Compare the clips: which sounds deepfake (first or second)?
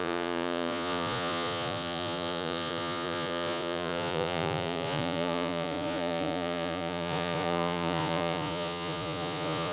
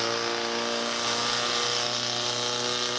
first